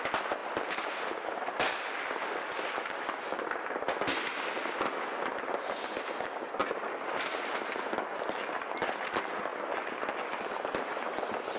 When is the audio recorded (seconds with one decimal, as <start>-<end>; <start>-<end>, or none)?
0.0-6.6; 7.2-11.6